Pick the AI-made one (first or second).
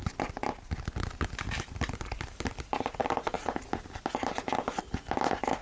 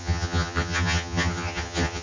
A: second